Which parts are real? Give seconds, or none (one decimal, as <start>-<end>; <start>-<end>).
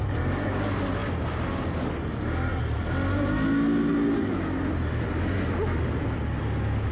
0.0-6.9